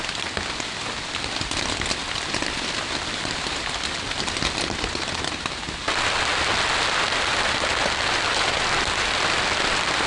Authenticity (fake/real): real